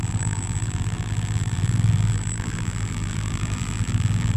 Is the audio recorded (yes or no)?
no